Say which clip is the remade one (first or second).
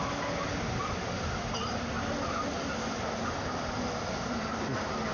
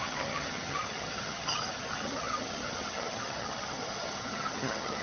second